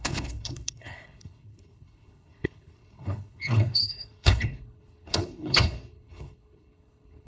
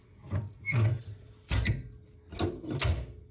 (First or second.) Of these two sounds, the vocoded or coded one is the first